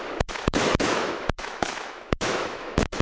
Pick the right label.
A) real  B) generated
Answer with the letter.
B